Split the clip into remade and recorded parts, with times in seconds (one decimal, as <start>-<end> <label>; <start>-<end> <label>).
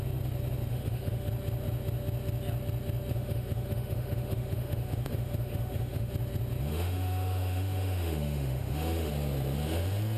0.0-0.7 recorded; 0.7-1.3 remade; 1.3-3.1 recorded; 3.1-6.1 remade; 6.1-6.7 recorded; 6.7-9.1 remade; 9.1-10.2 recorded